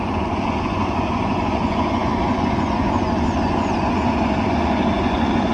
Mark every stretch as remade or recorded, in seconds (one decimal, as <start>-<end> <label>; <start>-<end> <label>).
0.0-5.5 remade

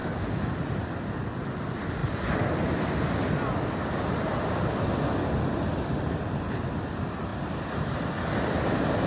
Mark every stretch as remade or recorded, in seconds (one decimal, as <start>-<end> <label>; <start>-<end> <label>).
0.0-9.1 recorded

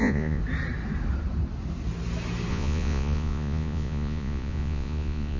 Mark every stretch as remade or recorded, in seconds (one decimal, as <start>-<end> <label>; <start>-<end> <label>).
0.0-0.4 remade; 0.4-2.5 recorded; 2.5-5.4 remade

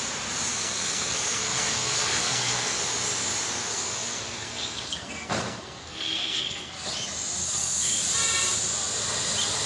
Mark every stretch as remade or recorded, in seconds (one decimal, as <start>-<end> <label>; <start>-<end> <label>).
0.0-0.5 recorded; 0.5-2.8 remade; 2.8-3.7 recorded; 3.7-6.7 remade; 6.7-7.4 recorded; 7.4-8.0 remade; 8.0-9.7 recorded

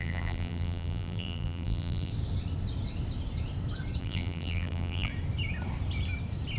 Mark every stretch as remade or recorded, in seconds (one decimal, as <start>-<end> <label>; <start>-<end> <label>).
0.0-2.1 remade; 2.1-4.0 recorded; 4.0-5.1 remade; 5.1-6.6 recorded

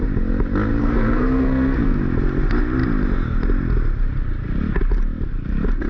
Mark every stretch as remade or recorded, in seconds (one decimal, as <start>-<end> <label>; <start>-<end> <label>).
0.0-0.8 recorded; 0.8-2.0 remade; 2.0-5.9 recorded